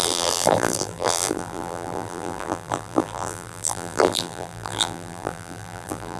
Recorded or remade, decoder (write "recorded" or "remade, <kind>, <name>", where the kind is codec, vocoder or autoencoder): remade, vocoder, BigVGAN v2